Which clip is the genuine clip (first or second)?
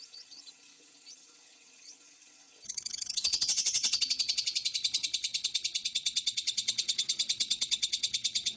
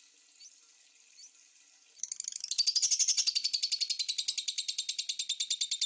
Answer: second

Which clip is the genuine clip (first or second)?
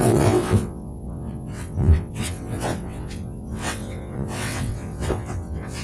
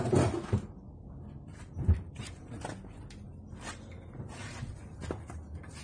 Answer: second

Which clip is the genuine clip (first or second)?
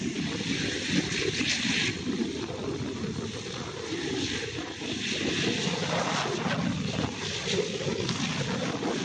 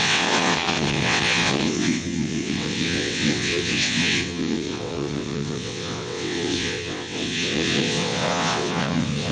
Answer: first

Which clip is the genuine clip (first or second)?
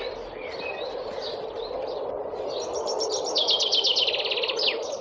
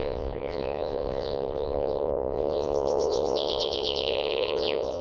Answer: first